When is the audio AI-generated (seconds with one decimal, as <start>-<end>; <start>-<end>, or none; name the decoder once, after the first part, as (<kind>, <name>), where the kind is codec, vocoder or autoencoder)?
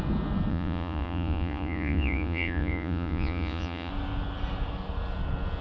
0.5-3.9 (vocoder, Vocos)